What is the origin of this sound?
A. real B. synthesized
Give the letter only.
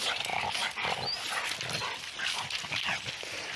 A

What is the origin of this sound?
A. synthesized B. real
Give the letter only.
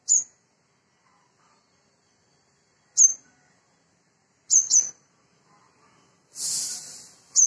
B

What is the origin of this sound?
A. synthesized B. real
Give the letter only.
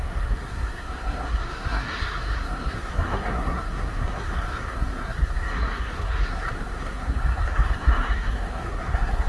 A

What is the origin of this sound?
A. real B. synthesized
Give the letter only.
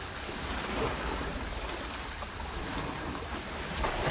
B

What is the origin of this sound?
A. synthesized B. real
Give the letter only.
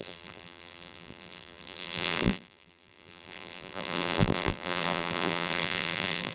A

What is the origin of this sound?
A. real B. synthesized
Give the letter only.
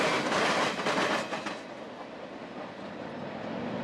A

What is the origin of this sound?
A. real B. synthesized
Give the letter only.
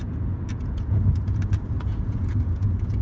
B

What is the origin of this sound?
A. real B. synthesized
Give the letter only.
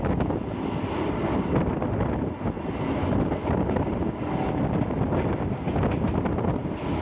A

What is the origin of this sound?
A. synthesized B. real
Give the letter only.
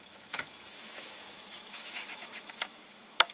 A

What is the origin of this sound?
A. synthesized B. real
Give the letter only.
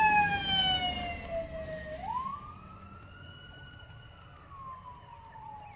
B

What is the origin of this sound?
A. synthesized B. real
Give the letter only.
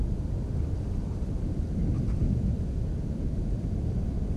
B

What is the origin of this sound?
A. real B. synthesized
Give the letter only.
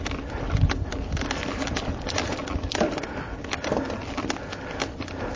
A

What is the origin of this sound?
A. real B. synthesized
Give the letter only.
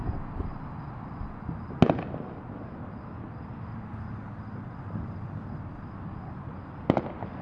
A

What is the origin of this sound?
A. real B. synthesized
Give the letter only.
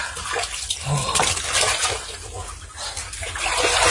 A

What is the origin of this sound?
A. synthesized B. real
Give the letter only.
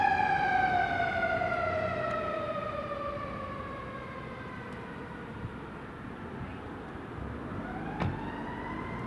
B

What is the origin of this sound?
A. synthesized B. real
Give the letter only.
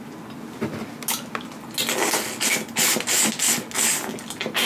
B